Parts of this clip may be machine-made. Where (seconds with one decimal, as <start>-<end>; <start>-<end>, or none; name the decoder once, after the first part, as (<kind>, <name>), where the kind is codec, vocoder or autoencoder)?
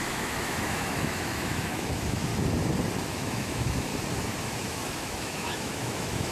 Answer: 0.0-2.3 (autoencoder, DAC-VAE); 3.0-3.9; 4.4-6.3